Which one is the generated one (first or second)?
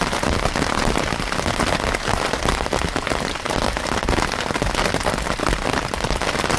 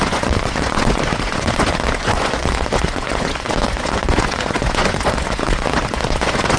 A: second